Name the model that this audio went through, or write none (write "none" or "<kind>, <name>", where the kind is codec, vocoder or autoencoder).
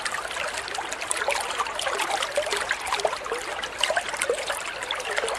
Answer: none